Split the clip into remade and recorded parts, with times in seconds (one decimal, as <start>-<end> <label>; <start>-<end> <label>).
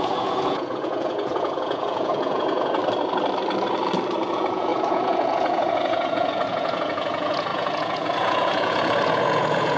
0.0-2.8 remade; 2.8-4.3 recorded; 4.3-9.8 remade